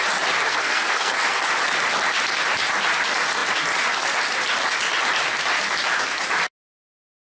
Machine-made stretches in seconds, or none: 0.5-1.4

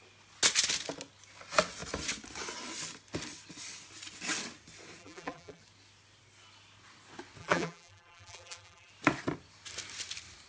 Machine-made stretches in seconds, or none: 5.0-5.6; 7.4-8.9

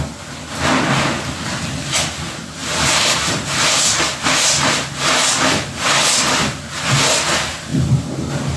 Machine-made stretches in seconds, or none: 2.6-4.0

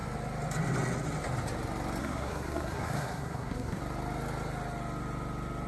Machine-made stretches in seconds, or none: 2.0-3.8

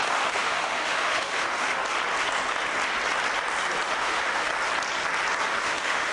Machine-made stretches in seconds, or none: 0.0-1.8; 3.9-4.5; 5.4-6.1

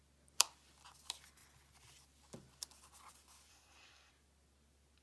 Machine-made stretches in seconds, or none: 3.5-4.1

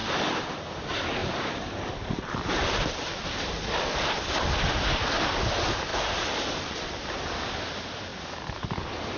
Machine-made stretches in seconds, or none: 0.0-0.5; 1.2-4.1; 5.9-7.0